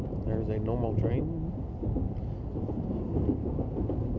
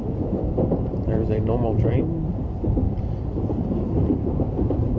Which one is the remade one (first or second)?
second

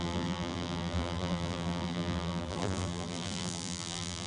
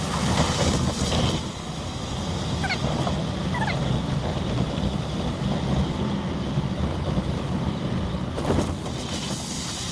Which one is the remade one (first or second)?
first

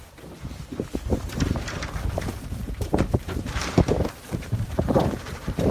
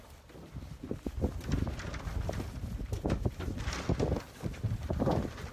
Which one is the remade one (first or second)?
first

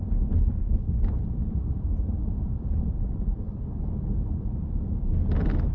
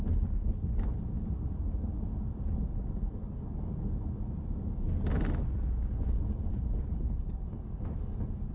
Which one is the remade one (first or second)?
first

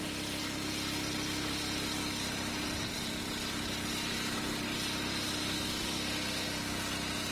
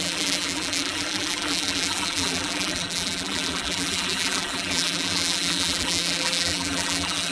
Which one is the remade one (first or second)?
second